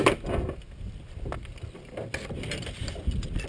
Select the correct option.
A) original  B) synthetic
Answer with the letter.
A